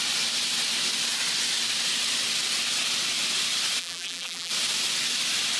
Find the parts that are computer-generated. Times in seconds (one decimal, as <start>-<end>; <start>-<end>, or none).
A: 3.8-4.5

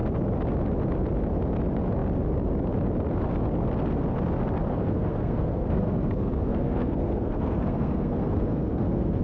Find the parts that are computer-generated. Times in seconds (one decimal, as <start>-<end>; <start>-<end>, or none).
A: 4.7-9.2

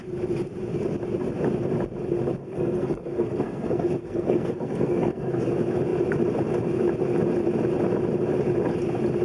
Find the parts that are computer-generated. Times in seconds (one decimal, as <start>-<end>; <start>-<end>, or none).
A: 2.4-5.4